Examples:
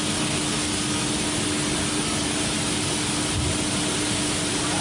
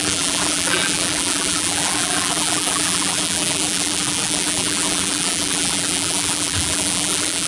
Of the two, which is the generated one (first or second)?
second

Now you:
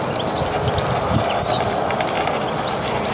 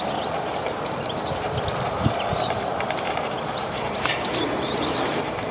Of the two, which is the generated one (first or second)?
second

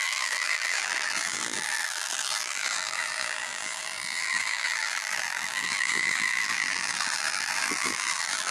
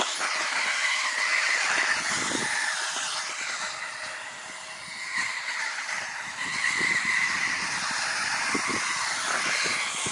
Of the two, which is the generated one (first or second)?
first